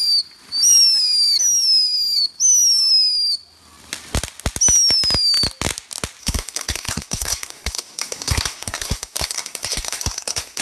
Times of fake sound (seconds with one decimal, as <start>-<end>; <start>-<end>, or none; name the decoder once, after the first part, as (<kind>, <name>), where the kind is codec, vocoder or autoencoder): 6.2-10.6 (codec, SNAC)